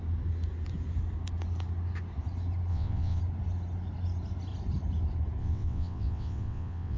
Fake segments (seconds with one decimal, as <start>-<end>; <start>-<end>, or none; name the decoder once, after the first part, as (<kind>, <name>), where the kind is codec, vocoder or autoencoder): 2.7-3.2 (vocoder, WaveNeXt); 5.4-7.0